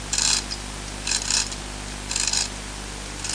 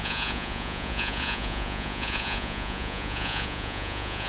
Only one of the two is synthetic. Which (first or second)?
second